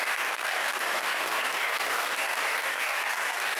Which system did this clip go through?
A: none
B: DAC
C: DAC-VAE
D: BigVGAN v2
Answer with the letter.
B